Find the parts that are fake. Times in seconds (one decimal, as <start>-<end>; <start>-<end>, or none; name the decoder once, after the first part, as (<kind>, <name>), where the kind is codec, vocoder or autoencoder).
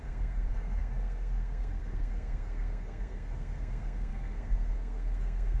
0.0-5.6 (codec, SNAC)